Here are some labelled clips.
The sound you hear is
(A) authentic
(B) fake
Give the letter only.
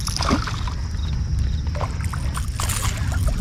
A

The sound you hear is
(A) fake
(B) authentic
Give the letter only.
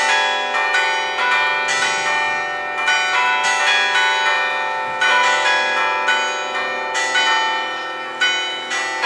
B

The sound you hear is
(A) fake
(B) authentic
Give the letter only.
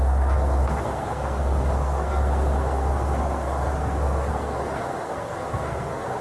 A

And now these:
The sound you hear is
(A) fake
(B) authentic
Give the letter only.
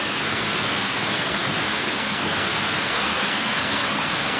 A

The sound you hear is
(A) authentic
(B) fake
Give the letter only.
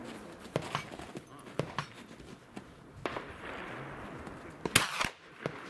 A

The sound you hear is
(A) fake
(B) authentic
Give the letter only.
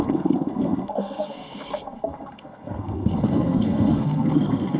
A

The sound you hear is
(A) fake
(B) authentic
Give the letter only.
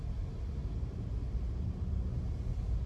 B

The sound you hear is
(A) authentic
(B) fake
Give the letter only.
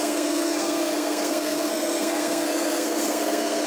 B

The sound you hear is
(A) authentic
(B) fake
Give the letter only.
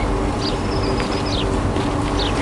A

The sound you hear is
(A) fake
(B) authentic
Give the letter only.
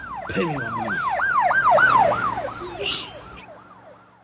B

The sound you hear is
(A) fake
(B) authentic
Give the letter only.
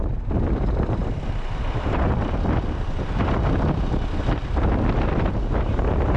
B